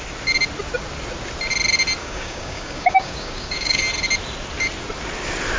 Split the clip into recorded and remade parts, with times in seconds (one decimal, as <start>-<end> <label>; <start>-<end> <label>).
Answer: 0.0-2.0 recorded; 2.0-3.8 remade; 3.8-5.6 recorded